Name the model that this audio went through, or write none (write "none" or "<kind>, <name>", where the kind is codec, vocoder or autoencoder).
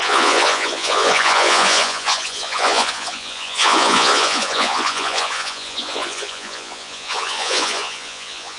vocoder, Vocos